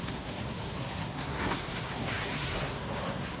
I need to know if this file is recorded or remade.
remade